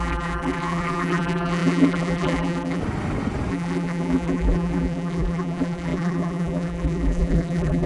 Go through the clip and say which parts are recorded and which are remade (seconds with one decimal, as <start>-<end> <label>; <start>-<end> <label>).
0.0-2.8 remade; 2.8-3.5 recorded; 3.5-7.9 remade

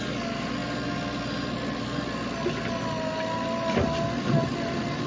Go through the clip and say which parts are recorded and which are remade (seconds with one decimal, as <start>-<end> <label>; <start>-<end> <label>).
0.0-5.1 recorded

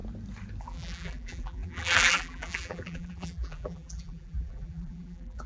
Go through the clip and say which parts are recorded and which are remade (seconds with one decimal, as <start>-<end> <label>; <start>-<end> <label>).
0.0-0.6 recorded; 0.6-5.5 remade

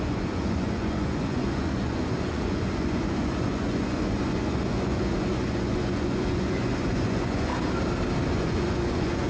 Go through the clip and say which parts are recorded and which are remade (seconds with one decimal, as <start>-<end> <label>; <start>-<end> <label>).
0.0-7.5 remade; 7.5-8.3 recorded; 8.3-9.3 remade